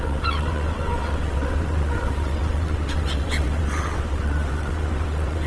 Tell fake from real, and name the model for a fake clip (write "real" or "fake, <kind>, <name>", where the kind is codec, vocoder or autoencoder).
fake, vocoder, WaveNeXt